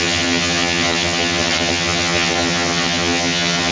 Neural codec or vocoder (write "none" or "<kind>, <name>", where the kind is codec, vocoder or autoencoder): vocoder, HiFi-GAN